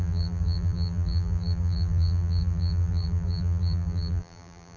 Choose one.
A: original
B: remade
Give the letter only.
B